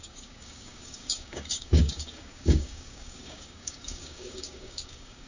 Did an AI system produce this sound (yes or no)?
yes